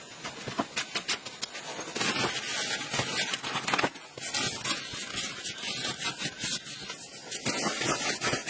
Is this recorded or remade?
recorded